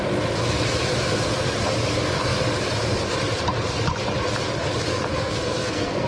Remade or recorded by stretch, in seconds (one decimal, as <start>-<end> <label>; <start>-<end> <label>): 0.0-4.9 recorded; 4.9-6.1 remade